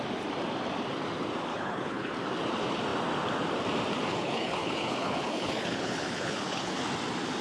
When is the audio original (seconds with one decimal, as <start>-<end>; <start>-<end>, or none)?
0.0-1.5; 2.1-4.1; 6.8-7.4